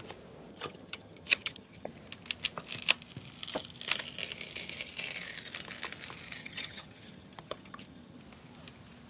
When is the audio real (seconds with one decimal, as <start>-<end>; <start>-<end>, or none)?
0.0-0.5; 1.9-6.4; 8.2-9.1